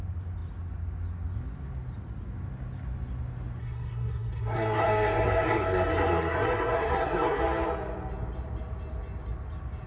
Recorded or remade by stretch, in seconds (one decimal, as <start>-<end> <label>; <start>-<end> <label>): 0.0-3.6 recorded; 3.6-7.4 remade; 7.4-9.9 recorded